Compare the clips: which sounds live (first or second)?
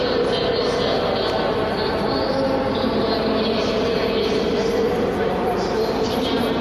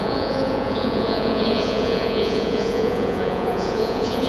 first